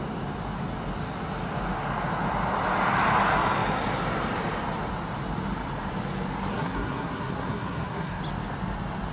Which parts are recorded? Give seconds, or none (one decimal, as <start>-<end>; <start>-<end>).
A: 0.0-6.5; 8.2-9.1